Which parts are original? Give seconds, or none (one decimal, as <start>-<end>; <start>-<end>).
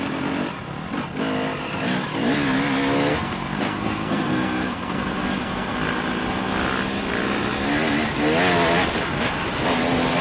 0.0-3.1; 5.8-10.2